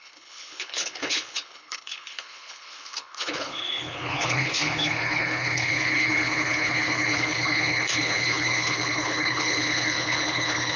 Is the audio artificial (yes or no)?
yes